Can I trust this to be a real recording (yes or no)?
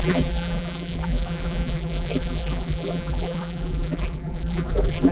no